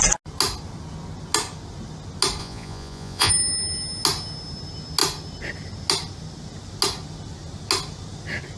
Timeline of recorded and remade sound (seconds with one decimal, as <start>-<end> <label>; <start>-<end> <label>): 0.0-2.4 recorded; 2.4-3.3 remade; 3.3-8.6 recorded